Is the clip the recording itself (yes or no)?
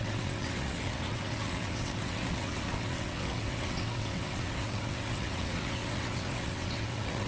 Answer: no